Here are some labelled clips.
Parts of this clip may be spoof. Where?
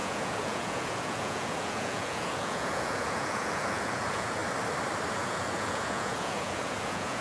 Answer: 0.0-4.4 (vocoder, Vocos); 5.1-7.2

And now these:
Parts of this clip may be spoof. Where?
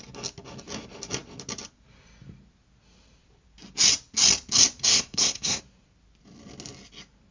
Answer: 4.9-5.6 (codec, SNAC)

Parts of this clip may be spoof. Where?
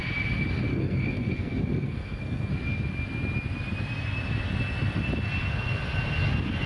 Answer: 0.7-2.5 (codec, SNAC)